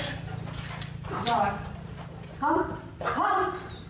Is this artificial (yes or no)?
no